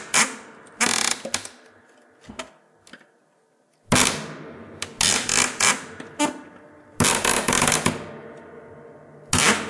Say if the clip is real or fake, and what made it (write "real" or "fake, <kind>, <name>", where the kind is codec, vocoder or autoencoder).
real